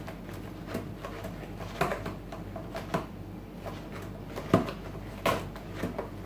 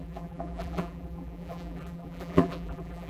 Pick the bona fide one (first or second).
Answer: first